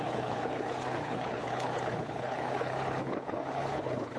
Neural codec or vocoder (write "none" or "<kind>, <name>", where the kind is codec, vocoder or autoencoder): codec, HILCodec